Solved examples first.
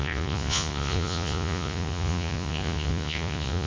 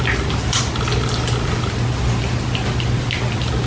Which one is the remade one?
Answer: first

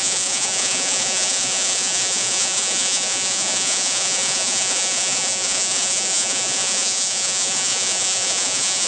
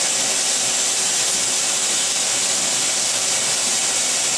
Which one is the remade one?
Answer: first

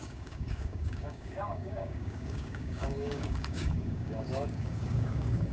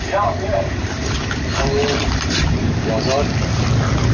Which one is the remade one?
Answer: first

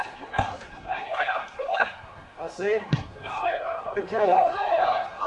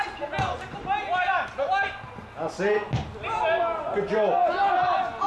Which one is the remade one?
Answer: first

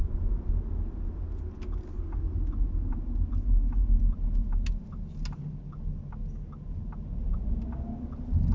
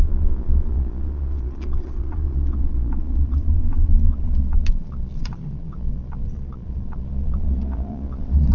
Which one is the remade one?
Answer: second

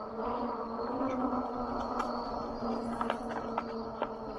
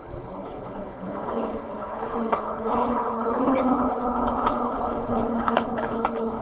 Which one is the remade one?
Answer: second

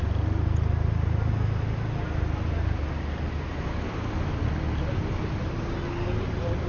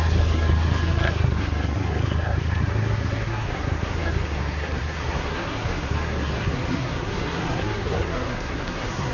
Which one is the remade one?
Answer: second